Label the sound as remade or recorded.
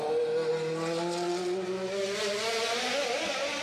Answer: recorded